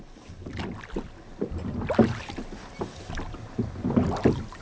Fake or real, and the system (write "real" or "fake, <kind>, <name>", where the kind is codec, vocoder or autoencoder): real